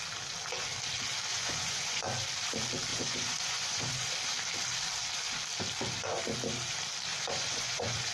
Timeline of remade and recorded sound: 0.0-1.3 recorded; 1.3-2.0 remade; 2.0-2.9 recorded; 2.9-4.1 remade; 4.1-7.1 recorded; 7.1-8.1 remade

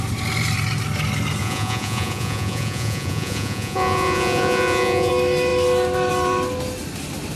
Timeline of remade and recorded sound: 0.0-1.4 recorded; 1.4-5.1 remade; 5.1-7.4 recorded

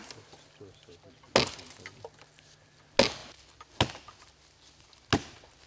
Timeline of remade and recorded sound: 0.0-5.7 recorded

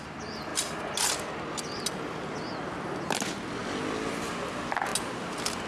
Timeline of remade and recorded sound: 0.0-5.7 recorded